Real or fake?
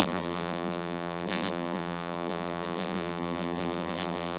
fake